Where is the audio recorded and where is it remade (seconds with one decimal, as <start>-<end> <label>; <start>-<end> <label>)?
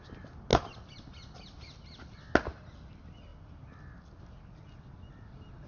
0.0-5.7 recorded